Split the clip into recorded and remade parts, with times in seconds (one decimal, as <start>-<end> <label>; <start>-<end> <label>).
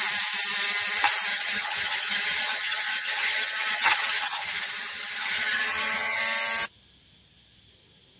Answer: 0.0-1.3 recorded; 1.3-6.2 remade; 6.2-8.2 recorded